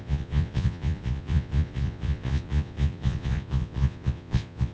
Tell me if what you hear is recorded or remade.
remade